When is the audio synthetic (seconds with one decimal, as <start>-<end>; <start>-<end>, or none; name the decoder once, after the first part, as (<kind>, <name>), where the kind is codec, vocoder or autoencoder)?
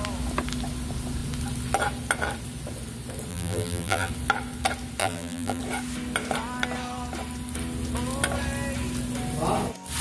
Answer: 3.3-4.1 (vocoder, BigVGAN v2); 5.0-5.6